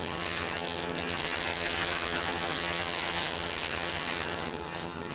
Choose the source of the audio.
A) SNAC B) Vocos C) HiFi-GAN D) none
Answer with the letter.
C